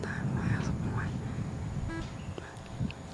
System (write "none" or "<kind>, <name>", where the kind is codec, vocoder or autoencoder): none